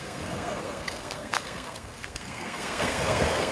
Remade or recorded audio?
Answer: remade